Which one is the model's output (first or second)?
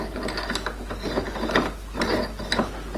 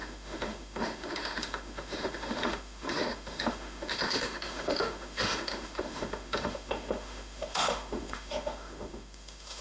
second